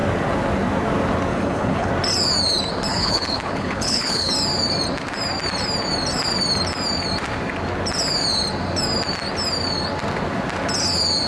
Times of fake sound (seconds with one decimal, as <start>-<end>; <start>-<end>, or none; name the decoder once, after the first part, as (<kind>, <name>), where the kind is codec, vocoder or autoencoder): 1.3-1.9 (codec, HILCodec); 2.9-4.3